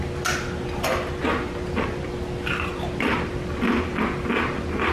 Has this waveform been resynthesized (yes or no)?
no